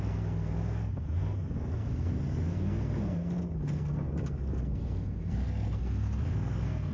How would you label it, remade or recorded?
remade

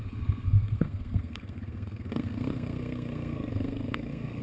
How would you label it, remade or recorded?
remade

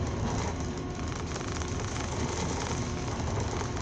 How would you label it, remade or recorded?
recorded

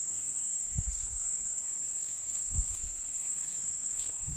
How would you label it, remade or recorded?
remade